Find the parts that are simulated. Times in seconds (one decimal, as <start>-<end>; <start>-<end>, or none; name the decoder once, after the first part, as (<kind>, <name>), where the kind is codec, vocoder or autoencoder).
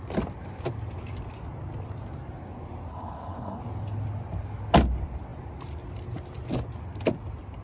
2.9-3.6 (codec, HILCodec)